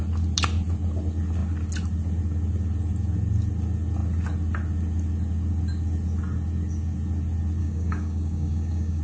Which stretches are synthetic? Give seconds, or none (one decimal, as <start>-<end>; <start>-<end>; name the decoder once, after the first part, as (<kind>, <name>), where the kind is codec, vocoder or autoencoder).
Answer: 7.6-9.0 (codec, DAC)